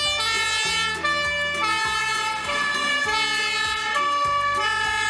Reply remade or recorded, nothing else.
recorded